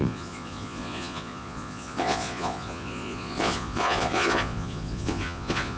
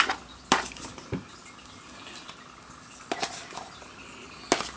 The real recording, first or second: second